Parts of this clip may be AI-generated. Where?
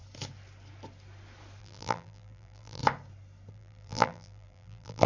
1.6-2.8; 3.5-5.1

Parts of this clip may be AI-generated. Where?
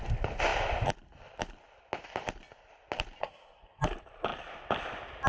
3.2-3.8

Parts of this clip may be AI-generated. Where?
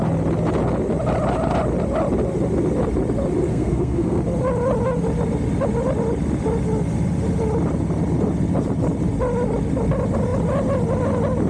3.5-4.2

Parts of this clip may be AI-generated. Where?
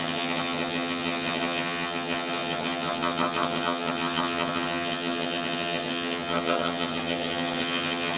0.0-8.2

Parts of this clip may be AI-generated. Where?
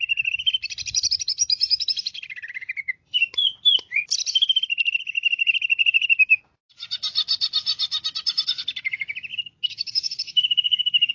9.3-11.1